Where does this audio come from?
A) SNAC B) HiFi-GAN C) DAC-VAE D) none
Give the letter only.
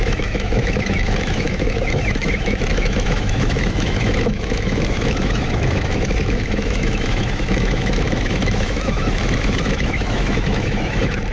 C